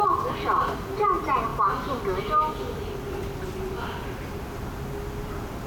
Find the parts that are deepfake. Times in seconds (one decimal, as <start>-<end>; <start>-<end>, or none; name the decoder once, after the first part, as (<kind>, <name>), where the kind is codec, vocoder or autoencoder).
none